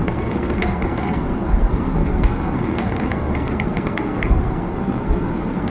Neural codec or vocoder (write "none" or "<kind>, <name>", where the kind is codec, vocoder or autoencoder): codec, SNAC